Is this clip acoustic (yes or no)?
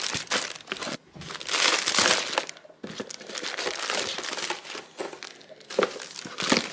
yes